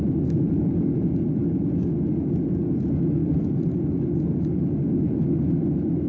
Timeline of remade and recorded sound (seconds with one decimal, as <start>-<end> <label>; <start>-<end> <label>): 0.0-6.1 recorded